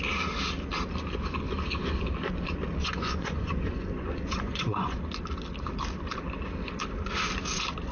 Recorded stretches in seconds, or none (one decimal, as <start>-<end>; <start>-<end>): 0.0-2.8; 5.0-7.9